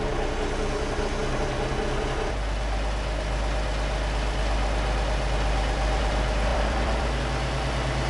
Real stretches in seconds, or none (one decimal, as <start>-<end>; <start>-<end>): 0.0-6.5; 7.2-8.1